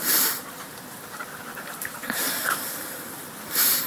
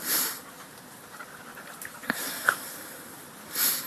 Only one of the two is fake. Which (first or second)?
first